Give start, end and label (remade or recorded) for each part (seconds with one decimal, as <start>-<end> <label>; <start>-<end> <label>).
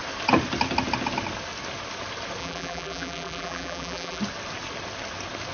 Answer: 0.0-2.4 recorded; 2.4-4.2 remade; 4.2-5.5 recorded